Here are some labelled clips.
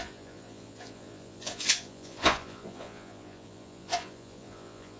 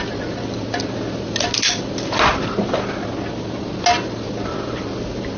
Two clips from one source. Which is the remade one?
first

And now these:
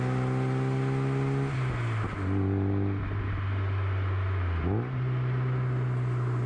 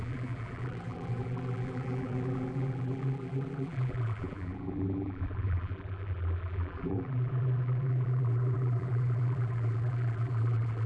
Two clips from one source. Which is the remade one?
second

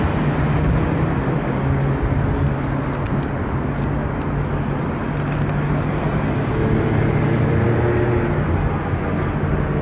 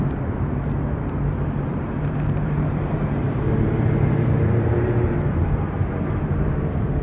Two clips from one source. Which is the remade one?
second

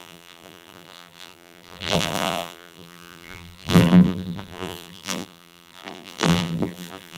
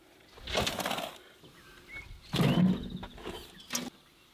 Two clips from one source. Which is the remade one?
first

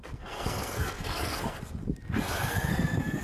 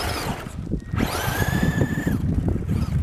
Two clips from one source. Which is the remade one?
first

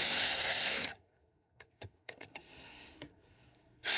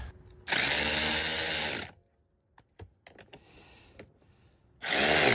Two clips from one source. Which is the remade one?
first